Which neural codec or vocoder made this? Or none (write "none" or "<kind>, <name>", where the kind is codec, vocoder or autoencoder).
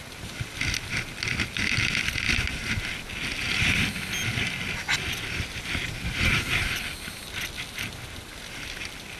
none